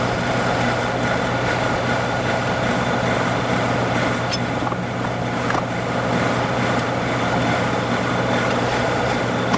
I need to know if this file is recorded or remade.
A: recorded